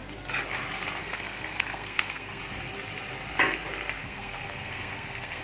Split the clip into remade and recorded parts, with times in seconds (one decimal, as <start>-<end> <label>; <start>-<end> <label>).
0.0-1.0 recorded; 1.0-2.4 remade; 2.4-4.0 recorded; 4.0-5.4 remade